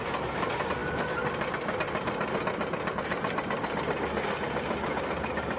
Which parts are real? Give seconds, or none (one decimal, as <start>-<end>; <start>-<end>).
0.0-5.6